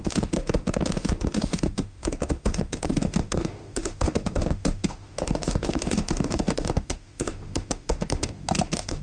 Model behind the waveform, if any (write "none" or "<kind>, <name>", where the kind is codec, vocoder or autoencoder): autoencoder, DAC-VAE